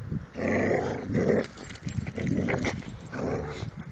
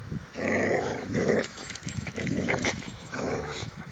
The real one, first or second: first